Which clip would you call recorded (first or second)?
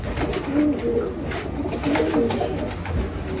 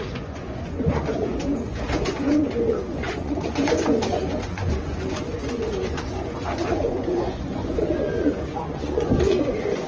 first